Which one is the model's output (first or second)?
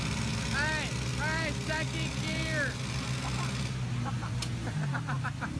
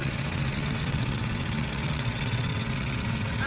second